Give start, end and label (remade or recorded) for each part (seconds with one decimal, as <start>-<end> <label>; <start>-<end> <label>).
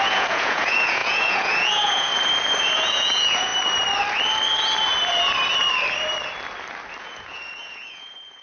0.0-2.1 remade; 2.1-2.6 recorded; 2.6-3.5 remade; 3.5-7.0 recorded; 7.0-8.4 remade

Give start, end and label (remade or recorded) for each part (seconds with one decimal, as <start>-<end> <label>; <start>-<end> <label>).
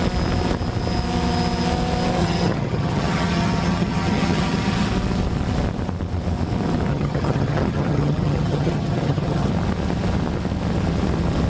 0.0-2.2 recorded; 2.2-4.9 remade; 4.9-6.9 recorded; 6.9-9.5 remade; 9.5-11.5 recorded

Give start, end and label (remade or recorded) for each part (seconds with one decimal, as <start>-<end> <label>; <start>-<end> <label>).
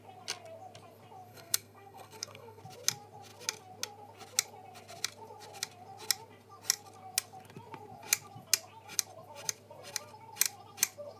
0.0-1.3 recorded; 1.3-2.6 remade; 2.6-11.2 recorded